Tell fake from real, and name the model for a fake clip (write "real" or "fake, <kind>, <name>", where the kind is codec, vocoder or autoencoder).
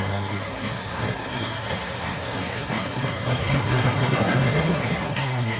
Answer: fake, codec, SNAC